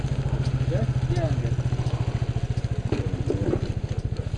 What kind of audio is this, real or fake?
real